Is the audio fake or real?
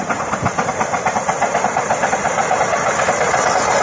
real